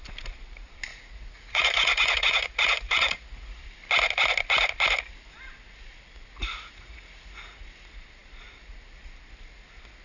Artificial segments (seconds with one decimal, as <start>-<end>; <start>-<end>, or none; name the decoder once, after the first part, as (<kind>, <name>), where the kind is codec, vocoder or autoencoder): 0.9-3.6 (vocoder, Vocos); 6.5-7.6